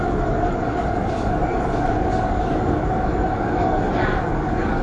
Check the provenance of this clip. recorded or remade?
remade